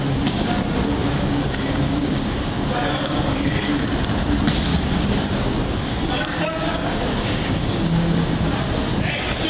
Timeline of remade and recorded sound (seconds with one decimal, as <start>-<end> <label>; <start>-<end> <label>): 0.0-1.0 recorded; 1.0-3.8 remade; 3.8-4.7 recorded; 4.7-8.3 remade; 8.3-9.5 recorded